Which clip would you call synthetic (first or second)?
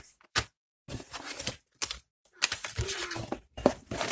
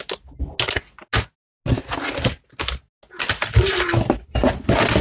first